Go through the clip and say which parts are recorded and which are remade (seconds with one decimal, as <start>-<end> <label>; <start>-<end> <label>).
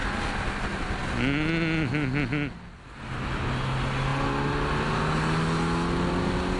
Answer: 0.0-6.6 recorded